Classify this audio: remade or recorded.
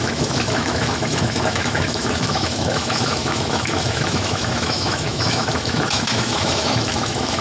remade